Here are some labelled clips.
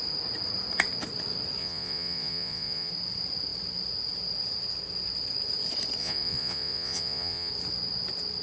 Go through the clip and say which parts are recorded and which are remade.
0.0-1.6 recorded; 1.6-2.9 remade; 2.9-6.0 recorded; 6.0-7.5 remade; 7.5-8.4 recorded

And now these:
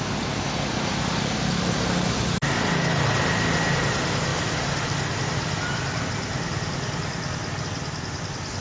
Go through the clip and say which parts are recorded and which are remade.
0.0-8.6 recorded

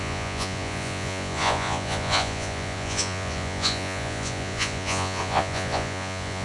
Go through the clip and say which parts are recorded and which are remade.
0.0-6.4 remade

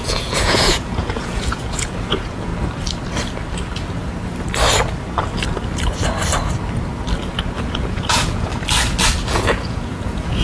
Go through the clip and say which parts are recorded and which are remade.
0.0-2.5 remade; 2.5-7.6 recorded; 7.6-8.5 remade; 8.5-9.3 recorded; 9.3-10.4 remade

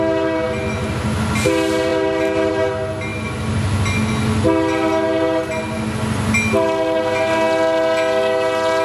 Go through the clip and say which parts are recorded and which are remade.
0.0-8.8 recorded

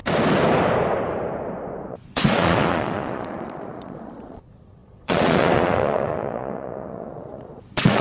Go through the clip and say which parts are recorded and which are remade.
0.0-1.9 recorded; 1.9-8.0 remade